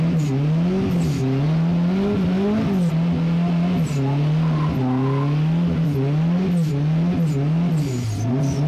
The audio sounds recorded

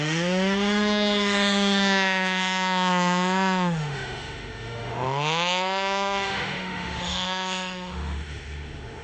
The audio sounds remade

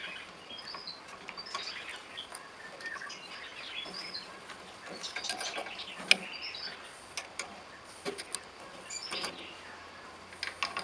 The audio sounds recorded